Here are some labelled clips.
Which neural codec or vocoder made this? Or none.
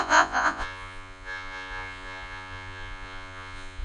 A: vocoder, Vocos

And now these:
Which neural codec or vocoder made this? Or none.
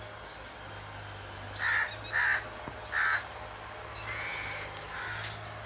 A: none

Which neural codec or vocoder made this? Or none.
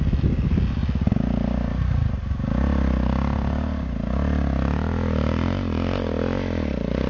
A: none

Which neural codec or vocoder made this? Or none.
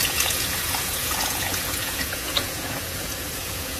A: vocoder, Vocos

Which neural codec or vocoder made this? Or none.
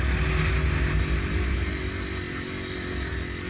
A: none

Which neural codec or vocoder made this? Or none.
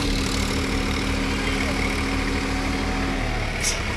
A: none